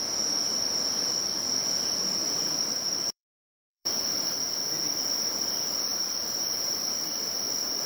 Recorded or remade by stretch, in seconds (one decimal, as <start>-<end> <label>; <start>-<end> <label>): 0.0-2.2 recorded; 2.2-4.8 remade; 4.8-5.9 recorded; 5.9-7.1 remade; 7.1-7.9 recorded